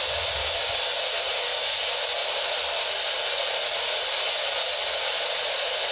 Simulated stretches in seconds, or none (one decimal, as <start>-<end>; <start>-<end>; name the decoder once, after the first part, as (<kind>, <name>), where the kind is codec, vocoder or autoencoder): none